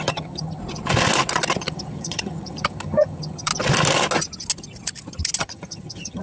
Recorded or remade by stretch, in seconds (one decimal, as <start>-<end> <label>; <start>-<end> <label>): 0.0-0.6 remade; 0.6-1.6 recorded; 1.6-3.5 remade; 3.5-5.4 recorded; 5.4-6.2 remade